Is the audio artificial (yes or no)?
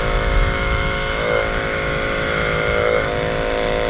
yes